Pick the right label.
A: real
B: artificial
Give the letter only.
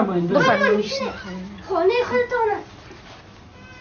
A